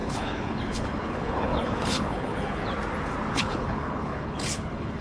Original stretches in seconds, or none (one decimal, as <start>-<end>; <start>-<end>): 2.6-3.3